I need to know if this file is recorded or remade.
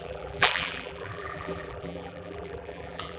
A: remade